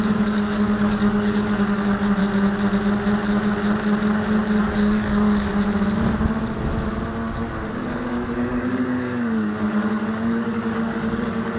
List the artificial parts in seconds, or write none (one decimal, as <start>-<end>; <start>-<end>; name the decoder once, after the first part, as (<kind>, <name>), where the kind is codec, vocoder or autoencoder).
0.0-2.2 (codec, DAC); 4.6-5.5; 7.8-11.6